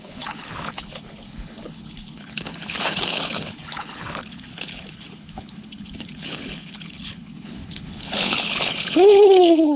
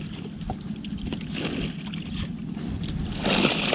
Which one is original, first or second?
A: second